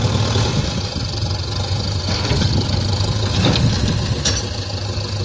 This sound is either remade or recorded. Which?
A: recorded